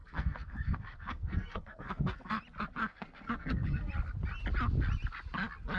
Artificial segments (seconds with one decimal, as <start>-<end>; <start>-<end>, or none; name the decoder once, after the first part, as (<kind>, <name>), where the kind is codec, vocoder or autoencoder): 0.0-2.4 (codec, SNAC); 2.8-3.9